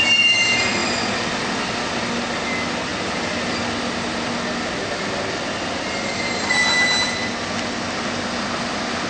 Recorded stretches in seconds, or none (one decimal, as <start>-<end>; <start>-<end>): 0.0-9.1